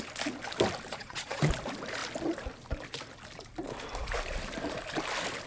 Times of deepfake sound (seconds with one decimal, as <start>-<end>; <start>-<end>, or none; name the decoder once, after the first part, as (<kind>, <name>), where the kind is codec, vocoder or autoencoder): 0.9-1.5 (vocoder, Vocos)

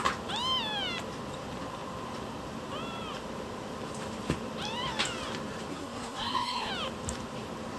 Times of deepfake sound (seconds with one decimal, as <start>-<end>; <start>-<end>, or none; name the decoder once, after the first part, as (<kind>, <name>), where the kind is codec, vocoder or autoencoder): 5.7-6.7 (codec, SNAC)

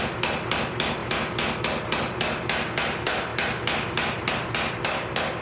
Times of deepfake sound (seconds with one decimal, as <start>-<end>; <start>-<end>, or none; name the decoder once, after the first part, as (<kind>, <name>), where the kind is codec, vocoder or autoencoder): none

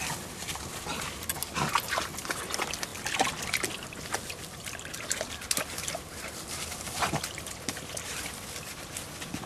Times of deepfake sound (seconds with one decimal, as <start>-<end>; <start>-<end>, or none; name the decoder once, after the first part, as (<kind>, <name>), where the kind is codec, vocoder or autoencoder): none

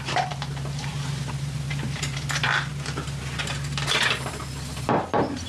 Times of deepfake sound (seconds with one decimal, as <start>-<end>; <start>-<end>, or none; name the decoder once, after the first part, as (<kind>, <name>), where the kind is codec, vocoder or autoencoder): none